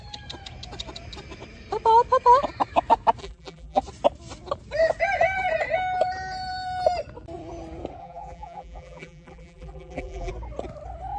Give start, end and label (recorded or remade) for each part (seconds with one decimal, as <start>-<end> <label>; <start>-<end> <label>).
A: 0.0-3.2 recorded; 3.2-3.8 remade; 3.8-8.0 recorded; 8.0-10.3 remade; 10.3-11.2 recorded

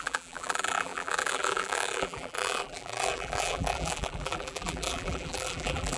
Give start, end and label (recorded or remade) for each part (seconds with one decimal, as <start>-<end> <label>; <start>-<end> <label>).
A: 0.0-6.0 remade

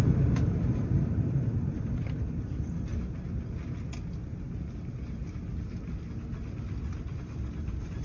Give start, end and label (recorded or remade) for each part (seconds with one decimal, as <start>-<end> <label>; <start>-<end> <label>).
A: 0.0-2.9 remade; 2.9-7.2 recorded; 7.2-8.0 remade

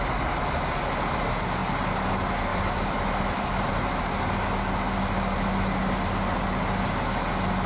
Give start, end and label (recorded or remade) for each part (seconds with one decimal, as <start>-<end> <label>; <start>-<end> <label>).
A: 0.0-2.5 recorded; 2.5-3.7 remade; 3.7-7.7 recorded

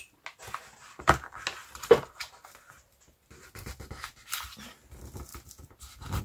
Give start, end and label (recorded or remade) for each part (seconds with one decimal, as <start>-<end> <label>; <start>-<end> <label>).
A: 0.0-1.6 recorded; 1.6-3.9 remade; 3.9-6.2 recorded